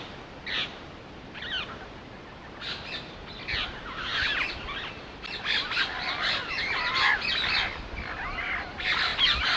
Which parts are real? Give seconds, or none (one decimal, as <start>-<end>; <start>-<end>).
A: 4.1-5.4; 9.1-9.6